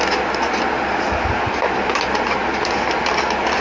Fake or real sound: real